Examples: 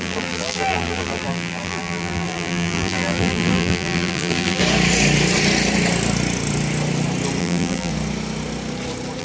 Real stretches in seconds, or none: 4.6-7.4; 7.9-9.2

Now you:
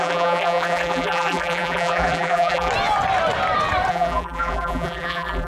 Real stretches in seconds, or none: 2.7-3.9

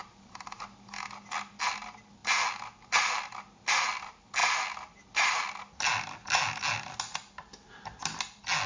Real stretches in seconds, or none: 0.0-8.7

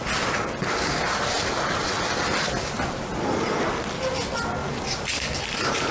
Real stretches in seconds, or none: 0.0-0.6; 1.2-4.6